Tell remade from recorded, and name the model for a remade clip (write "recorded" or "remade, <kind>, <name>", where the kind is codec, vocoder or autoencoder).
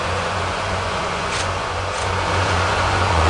remade, vocoder, Vocos